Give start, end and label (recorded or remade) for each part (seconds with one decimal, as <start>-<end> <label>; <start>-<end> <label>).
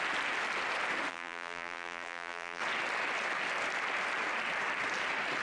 0.0-1.1 recorded; 1.1-2.6 remade; 2.6-5.4 recorded